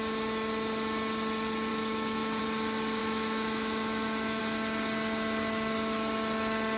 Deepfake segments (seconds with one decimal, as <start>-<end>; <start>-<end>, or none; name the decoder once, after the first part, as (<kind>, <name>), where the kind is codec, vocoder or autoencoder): 1.7-2.4 (autoencoder, DAC-VAE); 3.0-4.4